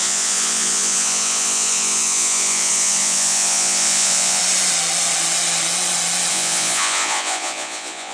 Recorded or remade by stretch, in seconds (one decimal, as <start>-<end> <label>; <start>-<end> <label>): 0.0-4.4 remade; 4.4-6.3 recorded; 6.3-8.1 remade